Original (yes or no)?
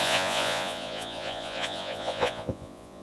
no